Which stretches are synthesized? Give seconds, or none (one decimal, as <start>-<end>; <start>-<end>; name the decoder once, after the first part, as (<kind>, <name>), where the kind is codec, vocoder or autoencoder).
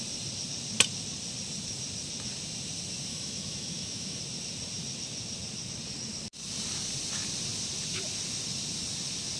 3.1-4.2 (autoencoder, DAC-VAE)